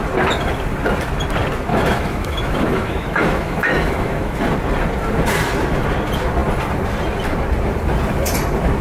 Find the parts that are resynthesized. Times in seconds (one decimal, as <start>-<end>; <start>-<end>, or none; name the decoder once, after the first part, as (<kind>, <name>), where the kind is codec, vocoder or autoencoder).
1.7-4.4 (autoencoder, DAC-VAE)